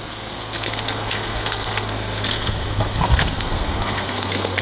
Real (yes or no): no